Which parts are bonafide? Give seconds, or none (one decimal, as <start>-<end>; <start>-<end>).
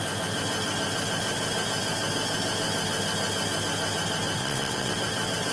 0.0-4.4; 4.9-5.5